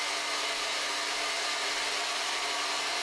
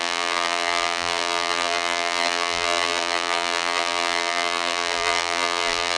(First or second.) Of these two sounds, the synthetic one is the second